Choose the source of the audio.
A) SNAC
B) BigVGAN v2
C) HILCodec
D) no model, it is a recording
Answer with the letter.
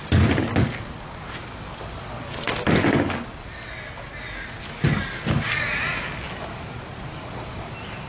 D